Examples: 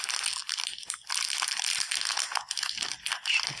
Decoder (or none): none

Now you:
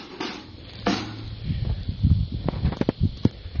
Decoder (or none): none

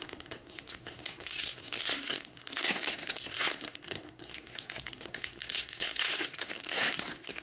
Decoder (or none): codec, SNAC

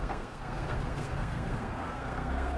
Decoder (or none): codec, SNAC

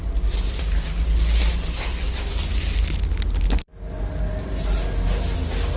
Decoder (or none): none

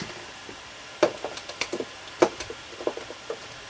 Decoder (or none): none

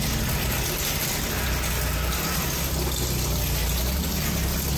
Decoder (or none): none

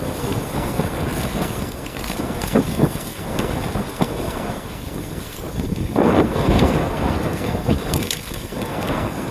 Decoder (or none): codec, SNAC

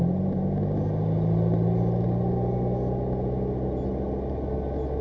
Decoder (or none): none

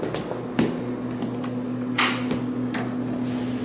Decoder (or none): none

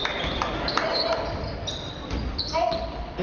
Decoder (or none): none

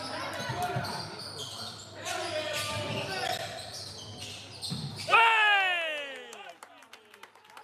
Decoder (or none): none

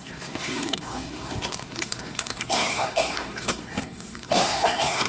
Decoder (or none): codec, SNAC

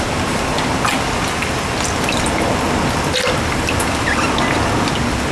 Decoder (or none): none